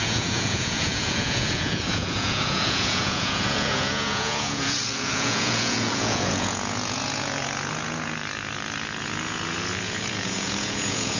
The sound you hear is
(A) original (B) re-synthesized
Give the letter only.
B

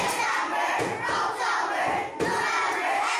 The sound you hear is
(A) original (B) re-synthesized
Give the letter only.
B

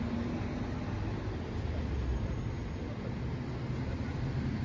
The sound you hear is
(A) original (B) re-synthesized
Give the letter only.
A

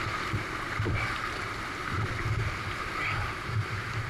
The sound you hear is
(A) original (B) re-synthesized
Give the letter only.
A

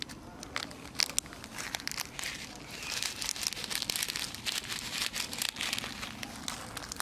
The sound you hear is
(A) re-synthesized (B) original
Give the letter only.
B